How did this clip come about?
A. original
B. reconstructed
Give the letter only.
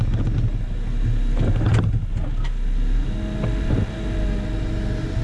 A